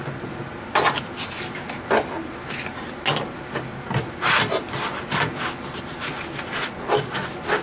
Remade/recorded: recorded